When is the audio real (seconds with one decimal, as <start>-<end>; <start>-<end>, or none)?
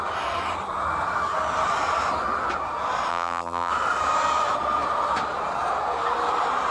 0.0-3.1; 3.7-6.7